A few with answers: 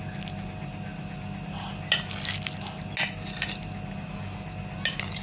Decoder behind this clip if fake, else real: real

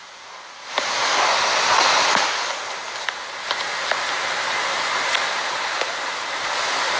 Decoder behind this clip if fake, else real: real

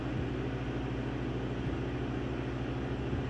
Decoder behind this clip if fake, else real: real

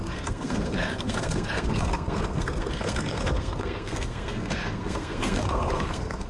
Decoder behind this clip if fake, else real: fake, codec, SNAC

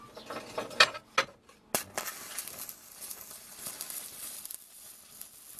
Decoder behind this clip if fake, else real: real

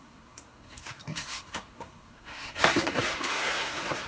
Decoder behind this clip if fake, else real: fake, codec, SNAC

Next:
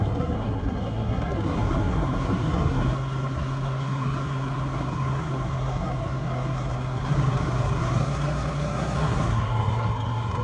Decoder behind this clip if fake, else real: fake, codec, SNAC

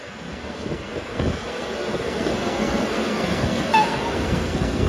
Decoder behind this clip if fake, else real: fake, codec, SNAC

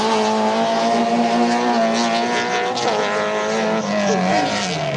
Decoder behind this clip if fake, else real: real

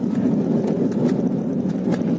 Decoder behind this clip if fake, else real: real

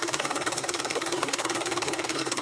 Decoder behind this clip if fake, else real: fake, codec, SNAC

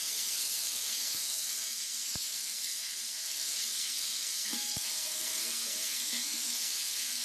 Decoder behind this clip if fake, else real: fake, codec, SNAC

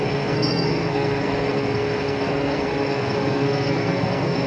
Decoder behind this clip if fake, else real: fake, codec, SNAC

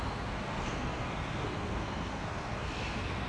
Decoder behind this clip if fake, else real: fake, codec, SNAC